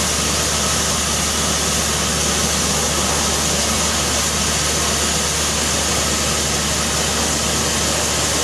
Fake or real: real